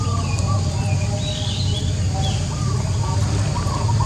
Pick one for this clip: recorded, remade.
recorded